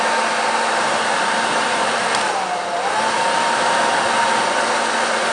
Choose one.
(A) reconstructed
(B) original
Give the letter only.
B